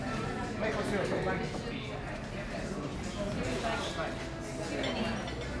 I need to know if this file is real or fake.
real